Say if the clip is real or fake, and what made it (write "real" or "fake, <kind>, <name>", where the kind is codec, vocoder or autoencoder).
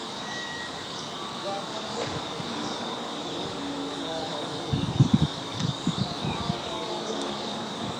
fake, codec, DAC